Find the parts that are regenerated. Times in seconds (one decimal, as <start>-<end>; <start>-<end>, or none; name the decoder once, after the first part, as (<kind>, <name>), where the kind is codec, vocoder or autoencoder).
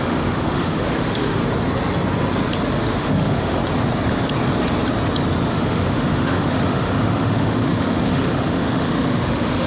0.0-1.4 (autoencoder, DAC-VAE); 2.8-3.6; 5.5-9.7